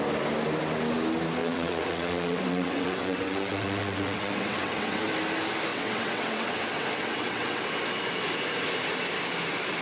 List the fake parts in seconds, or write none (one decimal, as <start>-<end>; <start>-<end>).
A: 1.4-5.1; 5.7-7.6